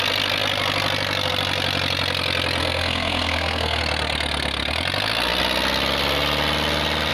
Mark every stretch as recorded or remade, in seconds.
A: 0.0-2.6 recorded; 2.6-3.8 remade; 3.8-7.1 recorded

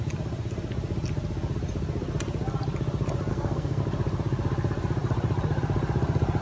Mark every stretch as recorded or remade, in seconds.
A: 0.0-3.3 recorded; 3.3-3.8 remade; 3.8-6.4 recorded

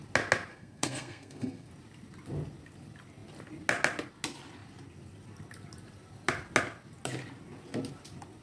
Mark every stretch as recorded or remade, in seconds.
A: 0.0-0.5 recorded; 0.5-1.7 remade; 1.7-8.4 recorded

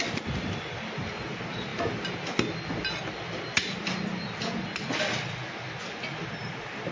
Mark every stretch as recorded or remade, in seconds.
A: 0.0-6.9 recorded

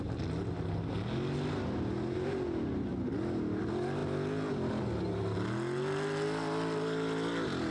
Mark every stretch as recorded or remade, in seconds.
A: 0.0-7.7 recorded

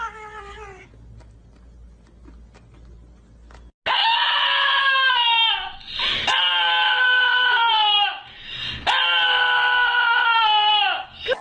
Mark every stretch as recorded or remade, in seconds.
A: 0.0-11.4 recorded